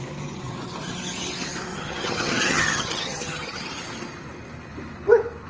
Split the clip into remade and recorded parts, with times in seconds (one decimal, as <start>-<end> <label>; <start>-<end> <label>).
0.0-1.7 recorded; 1.7-3.6 remade; 3.6-5.5 recorded